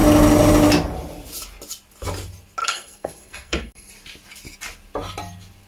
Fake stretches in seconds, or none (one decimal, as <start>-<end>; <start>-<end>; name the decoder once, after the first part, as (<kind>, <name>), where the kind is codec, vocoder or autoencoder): 2.6-3.9 (codec, SNAC)